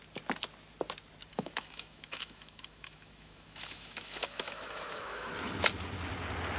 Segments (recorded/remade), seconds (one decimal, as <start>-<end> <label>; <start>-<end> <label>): 0.0-1.3 recorded; 1.3-5.3 remade; 5.3-6.6 recorded